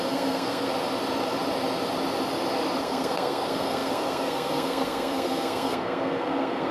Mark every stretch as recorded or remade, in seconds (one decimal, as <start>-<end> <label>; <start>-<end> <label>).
0.0-0.7 remade; 0.7-2.8 recorded; 2.8-6.7 remade